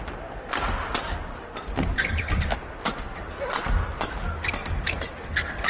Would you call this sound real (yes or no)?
yes